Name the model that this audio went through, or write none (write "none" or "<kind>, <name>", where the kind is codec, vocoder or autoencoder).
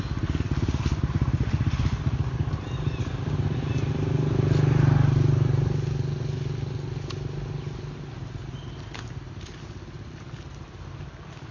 none